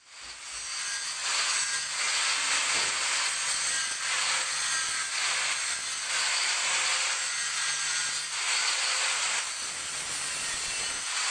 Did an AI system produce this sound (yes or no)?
no